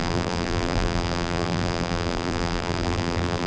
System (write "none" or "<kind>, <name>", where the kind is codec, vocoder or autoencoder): vocoder, BigVGAN v2